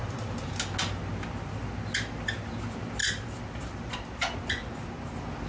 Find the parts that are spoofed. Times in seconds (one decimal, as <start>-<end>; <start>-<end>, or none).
0.0-0.5; 3.0-3.9